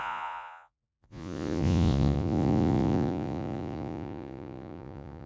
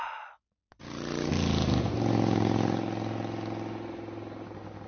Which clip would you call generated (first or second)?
first